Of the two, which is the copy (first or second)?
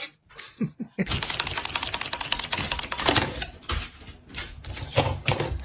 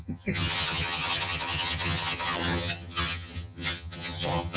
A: second